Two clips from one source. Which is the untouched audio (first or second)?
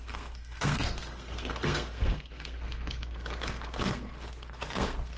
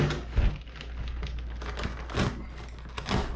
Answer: second